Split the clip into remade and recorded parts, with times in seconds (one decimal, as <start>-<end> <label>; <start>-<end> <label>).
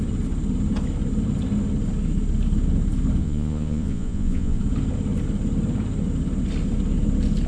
0.0-3.2 recorded; 3.2-4.6 remade; 4.6-7.5 recorded